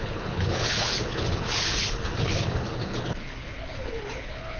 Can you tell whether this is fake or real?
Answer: fake